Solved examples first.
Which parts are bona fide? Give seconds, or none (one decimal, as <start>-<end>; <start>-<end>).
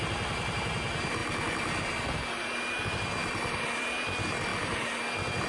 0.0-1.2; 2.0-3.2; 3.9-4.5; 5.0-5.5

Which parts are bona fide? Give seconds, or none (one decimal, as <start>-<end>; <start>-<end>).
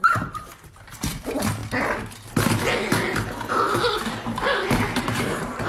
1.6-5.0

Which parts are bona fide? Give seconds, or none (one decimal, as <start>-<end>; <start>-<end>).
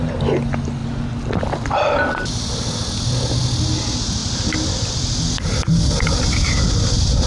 0.0-0.8; 2.5-4.2; 6.1-7.3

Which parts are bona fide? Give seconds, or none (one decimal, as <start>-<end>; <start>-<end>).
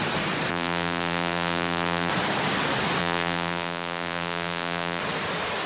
0.0-0.5; 2.1-3.0; 5.0-5.7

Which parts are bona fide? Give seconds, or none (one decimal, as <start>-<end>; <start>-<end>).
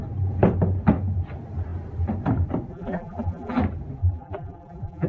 0.0-2.7; 3.6-4.0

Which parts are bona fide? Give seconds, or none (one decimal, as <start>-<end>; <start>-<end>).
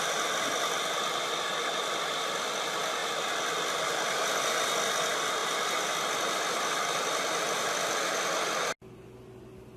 0.0-9.8